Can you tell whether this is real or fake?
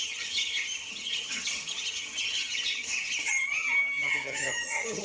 fake